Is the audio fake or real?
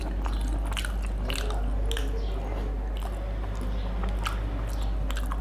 real